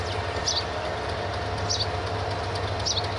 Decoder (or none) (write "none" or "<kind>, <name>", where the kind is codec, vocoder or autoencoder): none